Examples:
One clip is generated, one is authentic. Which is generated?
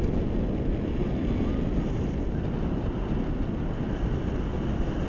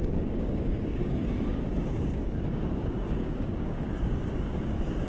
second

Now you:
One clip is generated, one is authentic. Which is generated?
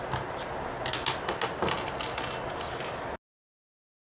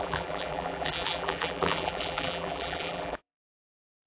second